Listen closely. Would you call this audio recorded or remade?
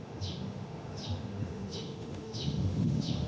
remade